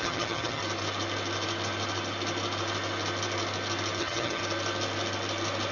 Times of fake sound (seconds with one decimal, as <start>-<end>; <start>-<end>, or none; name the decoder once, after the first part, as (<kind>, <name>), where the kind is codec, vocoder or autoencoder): 0.0-0.6 (vocoder, HiFi-GAN); 4.0-4.4